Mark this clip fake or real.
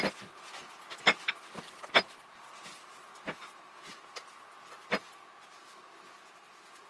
real